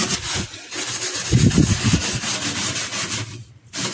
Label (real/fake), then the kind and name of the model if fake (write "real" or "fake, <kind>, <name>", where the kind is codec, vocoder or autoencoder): real